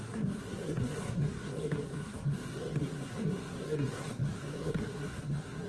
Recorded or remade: remade